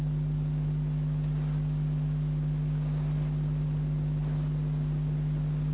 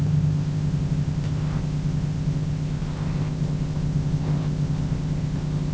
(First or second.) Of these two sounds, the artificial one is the second